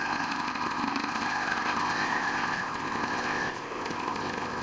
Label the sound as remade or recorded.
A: remade